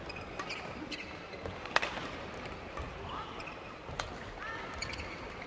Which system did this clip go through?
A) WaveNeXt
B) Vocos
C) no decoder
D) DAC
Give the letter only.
C